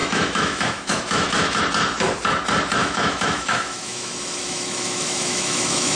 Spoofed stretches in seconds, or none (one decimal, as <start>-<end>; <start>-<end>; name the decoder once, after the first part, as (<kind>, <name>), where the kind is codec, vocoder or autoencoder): 0.0-1.6 (autoencoder, DAC-VAE); 2.8-6.0